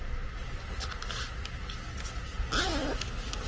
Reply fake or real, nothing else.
real